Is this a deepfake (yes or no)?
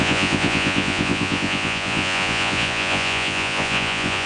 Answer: yes